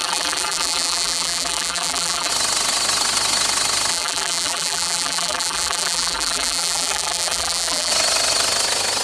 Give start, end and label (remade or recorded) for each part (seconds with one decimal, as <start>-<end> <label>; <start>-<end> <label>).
0.0-2.3 remade; 2.3-3.9 recorded; 3.9-7.9 remade; 7.9-9.0 recorded